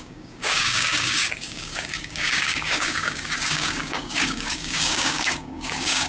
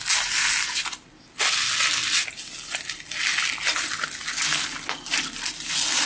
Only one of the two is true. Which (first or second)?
second